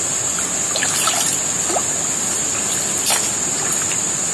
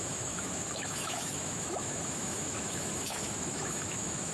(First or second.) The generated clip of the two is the second